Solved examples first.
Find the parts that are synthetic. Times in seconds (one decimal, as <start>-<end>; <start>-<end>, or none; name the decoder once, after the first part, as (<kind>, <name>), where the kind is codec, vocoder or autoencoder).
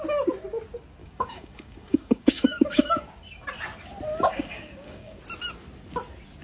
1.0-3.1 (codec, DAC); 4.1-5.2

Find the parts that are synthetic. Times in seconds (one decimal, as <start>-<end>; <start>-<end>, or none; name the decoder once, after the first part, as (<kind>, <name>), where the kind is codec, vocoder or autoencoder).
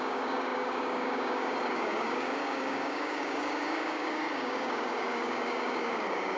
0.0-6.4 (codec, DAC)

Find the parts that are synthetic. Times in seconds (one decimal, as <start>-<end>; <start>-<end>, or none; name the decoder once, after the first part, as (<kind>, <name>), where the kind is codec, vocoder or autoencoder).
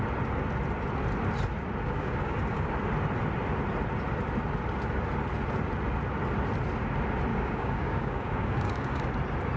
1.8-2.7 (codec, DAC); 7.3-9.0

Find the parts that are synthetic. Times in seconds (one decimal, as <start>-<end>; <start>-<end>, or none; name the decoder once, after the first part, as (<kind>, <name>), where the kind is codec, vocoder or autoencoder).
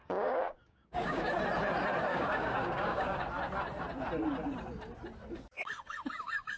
0.0-1.4 (codec, DAC); 2.1-3.2